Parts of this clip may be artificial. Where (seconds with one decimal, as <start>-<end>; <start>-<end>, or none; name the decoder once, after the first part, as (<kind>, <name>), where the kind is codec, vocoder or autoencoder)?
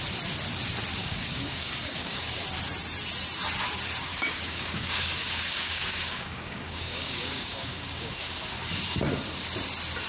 1.0-2.4 (codec, DAC); 4.1-8.1